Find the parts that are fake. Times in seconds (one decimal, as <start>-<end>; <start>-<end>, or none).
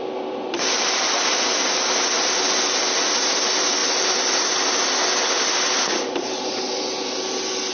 none